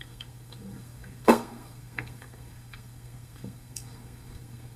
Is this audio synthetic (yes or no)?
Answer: yes